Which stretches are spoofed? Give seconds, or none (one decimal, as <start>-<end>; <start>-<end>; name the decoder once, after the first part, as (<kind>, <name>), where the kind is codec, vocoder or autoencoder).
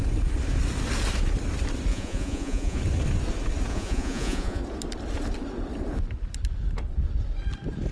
1.9-2.8 (vocoder, Vocos); 3.7-4.6